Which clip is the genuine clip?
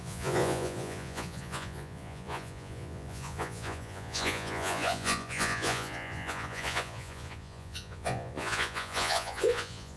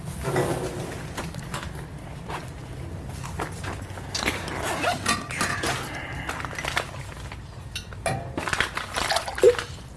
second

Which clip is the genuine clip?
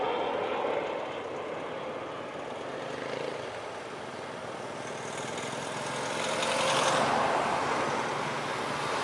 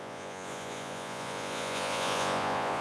first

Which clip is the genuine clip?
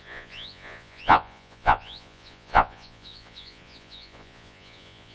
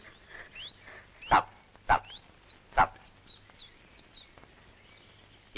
second